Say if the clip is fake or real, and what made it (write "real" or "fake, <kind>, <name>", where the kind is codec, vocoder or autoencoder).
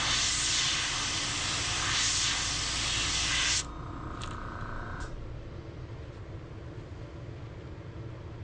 real